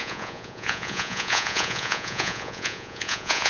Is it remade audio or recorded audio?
remade